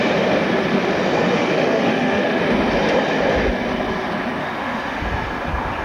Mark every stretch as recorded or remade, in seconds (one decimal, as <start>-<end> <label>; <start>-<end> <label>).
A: 0.0-1.3 recorded; 1.3-2.4 remade; 2.4-4.4 recorded; 4.4-5.0 remade; 5.0-5.8 recorded